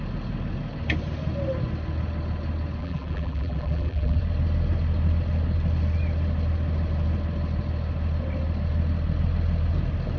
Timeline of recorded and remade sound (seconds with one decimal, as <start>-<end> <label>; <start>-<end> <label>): 0.0-2.8 recorded; 2.8-4.2 remade; 4.2-10.2 recorded